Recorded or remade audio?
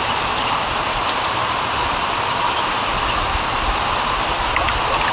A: recorded